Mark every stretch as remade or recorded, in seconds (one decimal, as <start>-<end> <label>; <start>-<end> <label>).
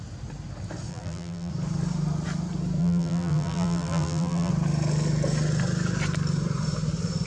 0.0-0.9 recorded; 0.9-1.5 remade; 1.5-2.8 recorded; 2.8-4.5 remade; 4.5-7.3 recorded